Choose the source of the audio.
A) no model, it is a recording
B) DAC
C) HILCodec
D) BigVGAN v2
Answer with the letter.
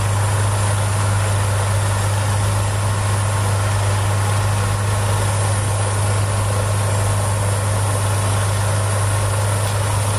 A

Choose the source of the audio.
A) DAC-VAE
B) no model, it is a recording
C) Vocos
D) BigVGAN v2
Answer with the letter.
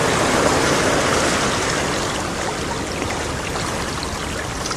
B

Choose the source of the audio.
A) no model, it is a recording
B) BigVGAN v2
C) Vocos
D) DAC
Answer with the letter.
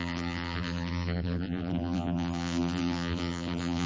B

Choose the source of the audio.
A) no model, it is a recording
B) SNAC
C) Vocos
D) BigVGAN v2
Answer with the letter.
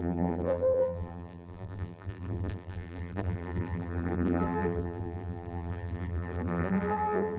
D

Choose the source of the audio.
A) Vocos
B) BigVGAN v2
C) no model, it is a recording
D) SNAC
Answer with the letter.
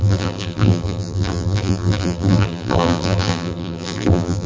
B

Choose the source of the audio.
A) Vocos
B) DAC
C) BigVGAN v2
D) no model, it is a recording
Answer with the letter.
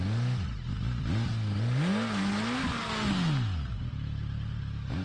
D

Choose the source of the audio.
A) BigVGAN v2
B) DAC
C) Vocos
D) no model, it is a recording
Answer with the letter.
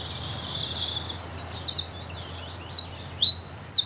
D